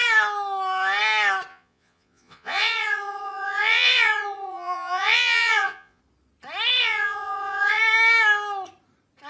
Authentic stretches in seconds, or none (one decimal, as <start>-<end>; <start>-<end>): 0.0-1.5; 6.0-6.8; 7.8-9.3